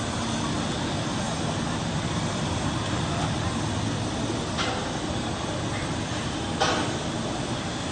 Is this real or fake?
real